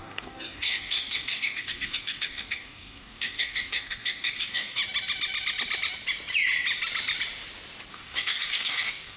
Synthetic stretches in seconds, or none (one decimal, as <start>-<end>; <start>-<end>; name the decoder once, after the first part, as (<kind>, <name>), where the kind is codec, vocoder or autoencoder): 0.0-4.8 (codec, DAC); 7.9-9.2

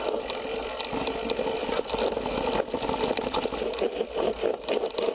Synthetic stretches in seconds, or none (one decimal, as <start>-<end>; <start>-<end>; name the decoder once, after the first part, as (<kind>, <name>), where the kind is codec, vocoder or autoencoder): none

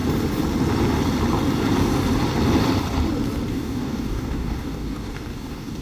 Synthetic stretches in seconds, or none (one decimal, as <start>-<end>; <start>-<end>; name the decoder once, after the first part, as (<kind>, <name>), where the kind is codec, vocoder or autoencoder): 3.5-5.8 (codec, DAC)

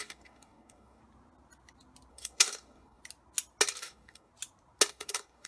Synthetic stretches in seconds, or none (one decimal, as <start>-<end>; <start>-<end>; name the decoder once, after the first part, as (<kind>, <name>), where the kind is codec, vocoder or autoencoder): 0.0-1.0 (codec, DAC); 2.1-3.0; 3.8-4.3; 4.9-5.5

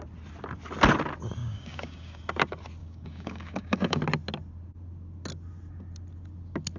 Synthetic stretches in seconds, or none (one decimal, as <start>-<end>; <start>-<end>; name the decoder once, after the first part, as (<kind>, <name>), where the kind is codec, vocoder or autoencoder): 1.4-2.2 (codec, DAC); 2.8-4.0

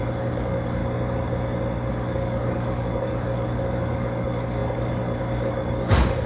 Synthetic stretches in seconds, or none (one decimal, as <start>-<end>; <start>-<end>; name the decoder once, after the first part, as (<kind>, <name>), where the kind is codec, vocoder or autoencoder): 0.0-0.8 (codec, DAC); 1.9-6.3